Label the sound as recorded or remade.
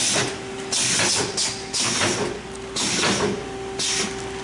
recorded